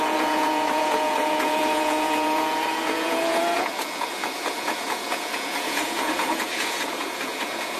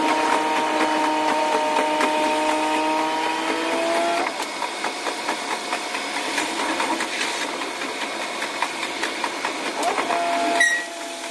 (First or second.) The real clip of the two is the second